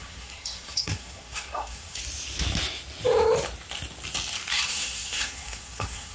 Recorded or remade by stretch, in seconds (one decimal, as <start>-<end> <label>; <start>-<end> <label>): 0.0-2.0 remade; 2.0-4.5 recorded; 4.5-6.1 remade